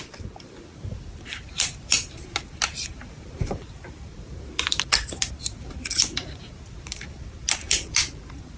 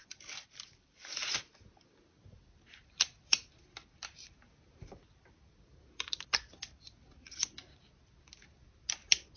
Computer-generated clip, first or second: first